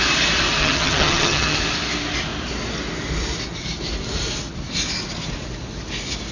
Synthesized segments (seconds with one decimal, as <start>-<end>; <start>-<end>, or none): 0.6-1.6